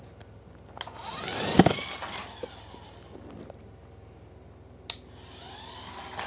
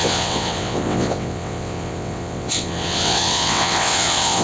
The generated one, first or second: second